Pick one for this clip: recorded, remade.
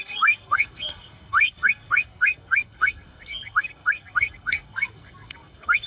remade